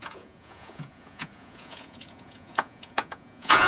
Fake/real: fake